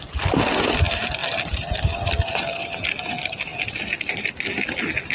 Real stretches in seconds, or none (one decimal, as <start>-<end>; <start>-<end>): 0.0-5.1